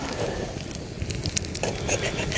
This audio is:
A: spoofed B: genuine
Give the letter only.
B